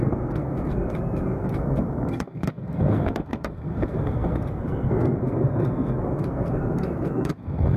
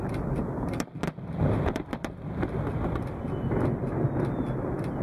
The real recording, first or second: second